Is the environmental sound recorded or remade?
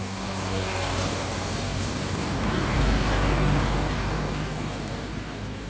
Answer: remade